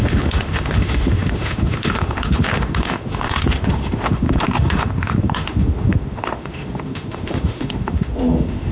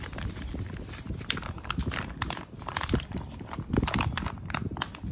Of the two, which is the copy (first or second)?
first